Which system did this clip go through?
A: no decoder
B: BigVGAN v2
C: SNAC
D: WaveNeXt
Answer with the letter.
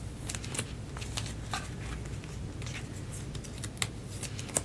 A